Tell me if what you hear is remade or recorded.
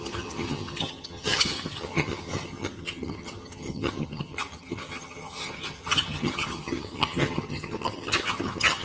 remade